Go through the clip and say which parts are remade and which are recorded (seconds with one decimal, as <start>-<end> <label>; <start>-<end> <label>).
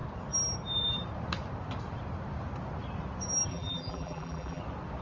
0.0-3.5 recorded; 3.5-4.6 remade; 4.6-5.0 recorded